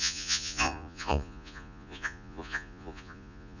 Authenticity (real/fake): fake